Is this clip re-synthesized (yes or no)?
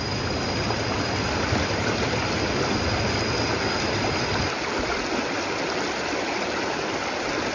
no